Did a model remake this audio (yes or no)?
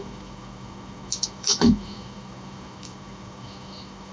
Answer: yes